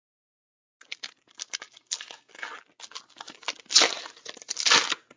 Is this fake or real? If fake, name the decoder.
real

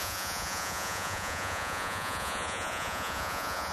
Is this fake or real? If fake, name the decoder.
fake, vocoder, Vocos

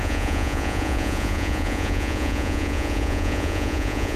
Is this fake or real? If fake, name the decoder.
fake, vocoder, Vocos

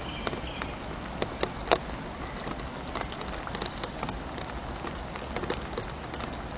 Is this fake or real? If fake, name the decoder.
real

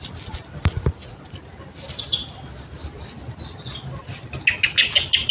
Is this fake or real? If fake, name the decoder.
real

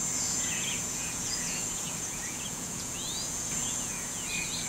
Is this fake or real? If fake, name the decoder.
fake, vocoder, Vocos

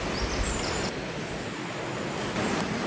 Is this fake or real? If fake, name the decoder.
real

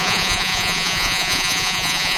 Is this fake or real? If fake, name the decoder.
fake, vocoder, Vocos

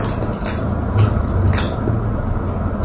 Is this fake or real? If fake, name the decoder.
real